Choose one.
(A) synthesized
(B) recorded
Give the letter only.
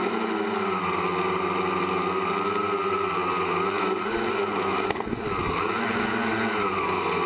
B